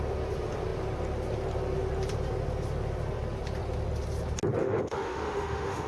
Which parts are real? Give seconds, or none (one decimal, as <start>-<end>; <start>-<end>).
0.0-4.6